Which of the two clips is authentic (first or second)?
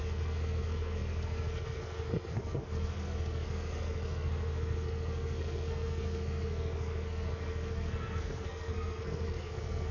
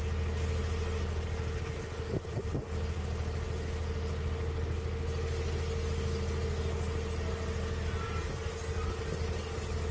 second